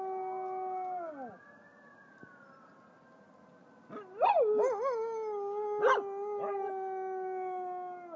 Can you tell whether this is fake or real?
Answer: real